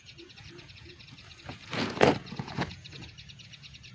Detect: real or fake fake